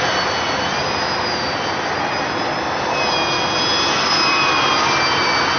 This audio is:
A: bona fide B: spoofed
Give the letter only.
A